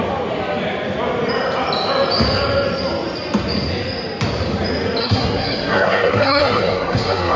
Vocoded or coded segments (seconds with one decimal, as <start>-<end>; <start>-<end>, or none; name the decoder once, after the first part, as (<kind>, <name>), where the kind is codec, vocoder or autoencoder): 5.0-7.4 (codec, SNAC)